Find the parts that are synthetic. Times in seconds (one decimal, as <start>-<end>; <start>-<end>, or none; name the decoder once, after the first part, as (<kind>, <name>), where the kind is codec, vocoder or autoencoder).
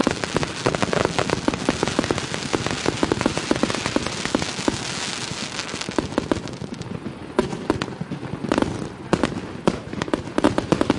0.0-1.4 (vocoder, BigVGAN v2)